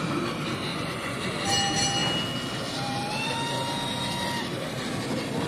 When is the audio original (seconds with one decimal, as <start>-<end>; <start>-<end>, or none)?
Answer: 0.0-0.7; 1.2-5.5